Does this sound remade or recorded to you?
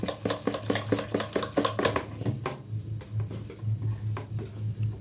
recorded